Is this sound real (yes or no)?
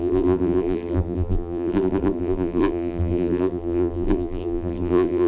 no